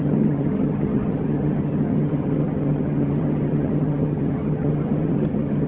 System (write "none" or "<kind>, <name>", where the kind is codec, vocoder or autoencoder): vocoder, HiFi-GAN